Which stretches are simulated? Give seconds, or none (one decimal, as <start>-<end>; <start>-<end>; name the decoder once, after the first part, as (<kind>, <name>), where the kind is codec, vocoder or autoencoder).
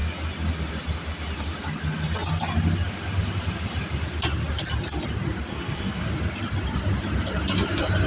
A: 5.5-6.1 (codec, SNAC)